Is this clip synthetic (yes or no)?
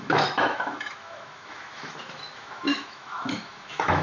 yes